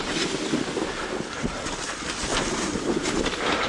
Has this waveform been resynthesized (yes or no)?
no